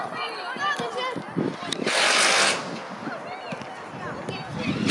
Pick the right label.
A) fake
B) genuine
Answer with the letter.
B